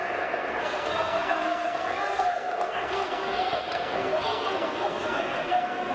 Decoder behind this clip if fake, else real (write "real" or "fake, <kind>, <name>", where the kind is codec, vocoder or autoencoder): fake, codec, SNAC